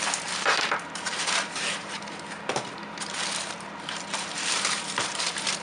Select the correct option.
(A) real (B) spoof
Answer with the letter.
B